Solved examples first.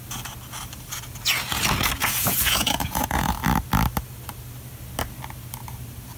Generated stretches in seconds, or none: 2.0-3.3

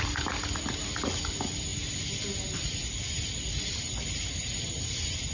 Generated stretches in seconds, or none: none

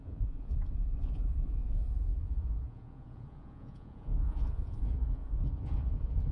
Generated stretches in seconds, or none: 0.0-6.3

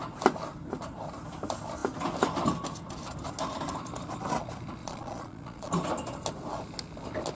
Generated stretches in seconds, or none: 4.8-5.7

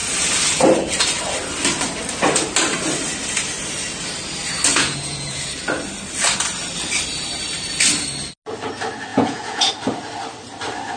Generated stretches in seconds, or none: 4.7-5.4; 9.1-9.7